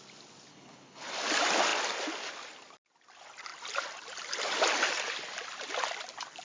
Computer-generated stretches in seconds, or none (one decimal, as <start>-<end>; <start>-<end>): 0.5-1.1